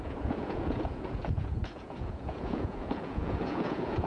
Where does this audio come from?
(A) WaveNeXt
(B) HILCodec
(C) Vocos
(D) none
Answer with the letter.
C